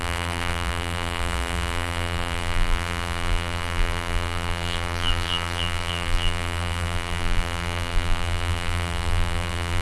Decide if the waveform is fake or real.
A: fake